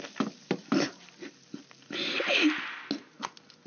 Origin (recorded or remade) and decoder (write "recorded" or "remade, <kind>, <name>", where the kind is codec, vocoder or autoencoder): recorded